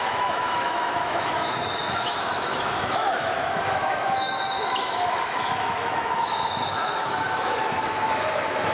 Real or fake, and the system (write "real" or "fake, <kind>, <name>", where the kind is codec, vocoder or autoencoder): fake, autoencoder, DAC-VAE